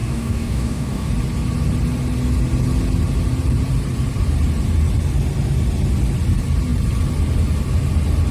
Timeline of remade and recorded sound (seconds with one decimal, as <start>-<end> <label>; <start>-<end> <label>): 0.0-1.1 remade; 1.1-8.3 recorded